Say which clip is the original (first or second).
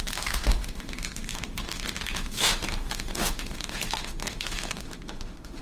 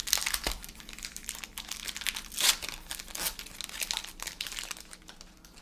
second